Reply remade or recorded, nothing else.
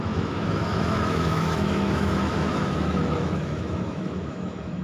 remade